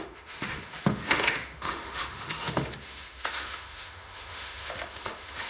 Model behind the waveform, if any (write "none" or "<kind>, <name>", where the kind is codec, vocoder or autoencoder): autoencoder, DAC-VAE